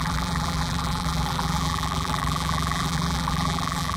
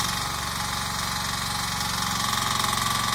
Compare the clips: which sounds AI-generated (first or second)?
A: first